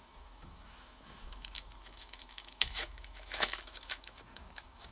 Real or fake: fake